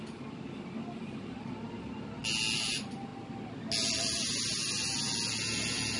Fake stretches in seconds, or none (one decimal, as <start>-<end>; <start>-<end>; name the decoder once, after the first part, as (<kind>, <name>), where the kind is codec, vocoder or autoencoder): none

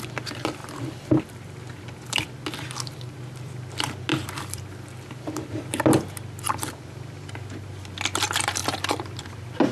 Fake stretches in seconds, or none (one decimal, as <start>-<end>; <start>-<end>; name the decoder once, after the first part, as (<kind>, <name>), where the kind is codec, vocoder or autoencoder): 0.6-1.2 (vocoder, BigVGAN v2); 4.1-5.8; 8.6-9.7

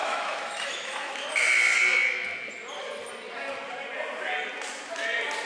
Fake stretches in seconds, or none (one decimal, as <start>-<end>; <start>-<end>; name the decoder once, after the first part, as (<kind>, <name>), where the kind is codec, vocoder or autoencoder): 0.0-1.3 (autoencoder, DAC-VAE)

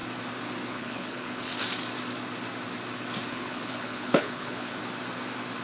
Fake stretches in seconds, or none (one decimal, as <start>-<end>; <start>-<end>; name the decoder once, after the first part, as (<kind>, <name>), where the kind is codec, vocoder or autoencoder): 0.7-1.5 (codec, HILCodec); 3.3-4.8

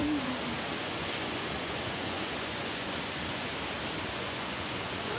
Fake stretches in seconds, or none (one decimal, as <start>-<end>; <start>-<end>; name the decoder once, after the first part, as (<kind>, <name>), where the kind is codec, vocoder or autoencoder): 0.7-3.5 (vocoder, Vocos); 4.1-5.2

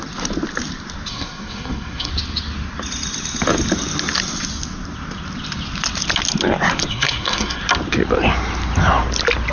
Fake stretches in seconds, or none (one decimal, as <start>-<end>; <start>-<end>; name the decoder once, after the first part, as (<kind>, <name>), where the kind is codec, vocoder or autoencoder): 1.1-2.1 (codec, SNAC); 6.9-7.6

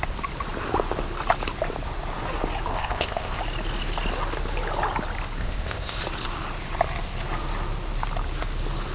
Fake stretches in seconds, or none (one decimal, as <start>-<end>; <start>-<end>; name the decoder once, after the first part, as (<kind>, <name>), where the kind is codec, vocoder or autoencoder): 2.7-3.4 (codec, ZipCodec); 5.4-6.0